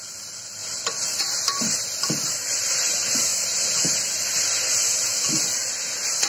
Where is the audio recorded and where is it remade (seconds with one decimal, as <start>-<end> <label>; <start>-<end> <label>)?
0.0-0.6 remade; 0.6-1.2 recorded; 1.2-3.3 remade; 3.3-5.2 recorded; 5.2-6.3 remade